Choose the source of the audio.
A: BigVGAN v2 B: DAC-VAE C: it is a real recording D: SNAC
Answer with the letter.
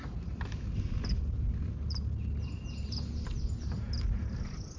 C